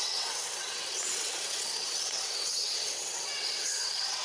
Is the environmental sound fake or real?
fake